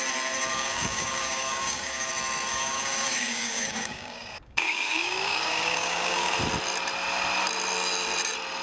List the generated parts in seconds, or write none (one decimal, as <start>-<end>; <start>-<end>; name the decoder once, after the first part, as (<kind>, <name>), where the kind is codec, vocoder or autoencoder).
0.5-2.1 (codec, DAC); 2.5-6.3